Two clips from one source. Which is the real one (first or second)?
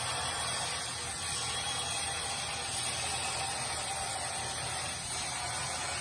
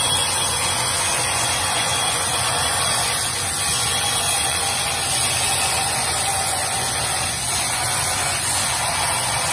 first